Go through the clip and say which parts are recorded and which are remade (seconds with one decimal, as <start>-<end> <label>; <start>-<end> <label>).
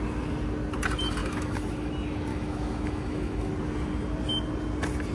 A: 0.0-1.2 recorded; 1.2-1.9 remade; 1.9-2.3 recorded; 2.3-3.5 remade; 3.5-5.1 recorded